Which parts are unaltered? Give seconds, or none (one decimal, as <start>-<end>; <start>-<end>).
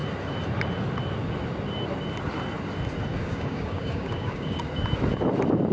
0.0-3.1; 4.6-5.7